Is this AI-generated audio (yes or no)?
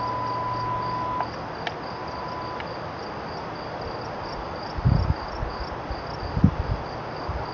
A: no